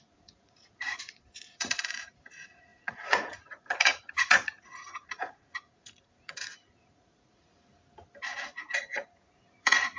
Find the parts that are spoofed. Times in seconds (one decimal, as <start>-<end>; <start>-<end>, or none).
0.0-7.5; 8.4-10.0